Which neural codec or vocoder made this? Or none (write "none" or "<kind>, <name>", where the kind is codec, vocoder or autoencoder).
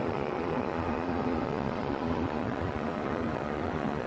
vocoder, Vocos